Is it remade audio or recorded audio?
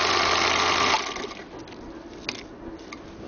recorded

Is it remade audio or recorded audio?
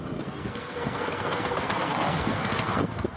remade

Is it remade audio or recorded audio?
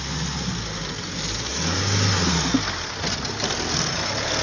recorded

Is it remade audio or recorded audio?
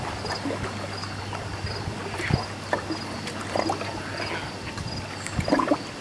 recorded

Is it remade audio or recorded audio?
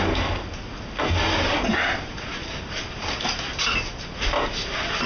recorded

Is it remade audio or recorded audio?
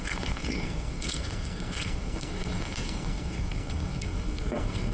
remade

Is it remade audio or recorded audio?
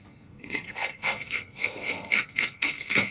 remade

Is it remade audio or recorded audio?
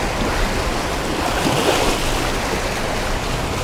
recorded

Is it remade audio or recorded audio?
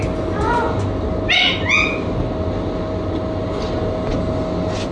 recorded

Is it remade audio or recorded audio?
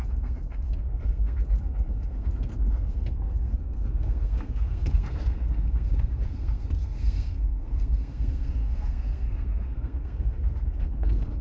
remade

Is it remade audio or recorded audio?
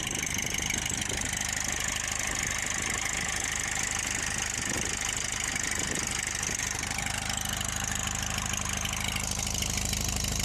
recorded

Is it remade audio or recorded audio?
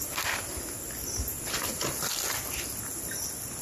recorded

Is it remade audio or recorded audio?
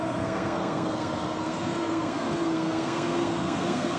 remade